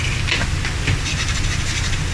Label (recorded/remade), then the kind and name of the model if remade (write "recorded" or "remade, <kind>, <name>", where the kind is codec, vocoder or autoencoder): recorded